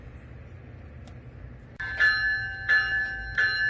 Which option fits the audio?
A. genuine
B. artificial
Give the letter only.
A